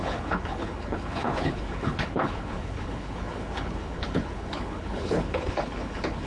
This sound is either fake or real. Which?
fake